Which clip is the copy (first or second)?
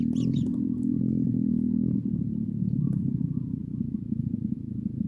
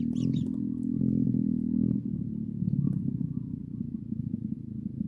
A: first